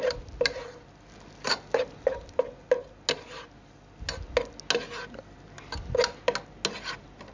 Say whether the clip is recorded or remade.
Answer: recorded